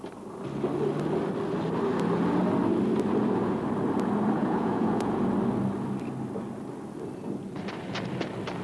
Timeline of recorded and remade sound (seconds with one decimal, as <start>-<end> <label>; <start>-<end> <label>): 0.0-4.4 recorded; 4.4-5.2 remade; 5.2-8.6 recorded